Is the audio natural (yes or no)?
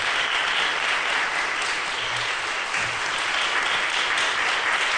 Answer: yes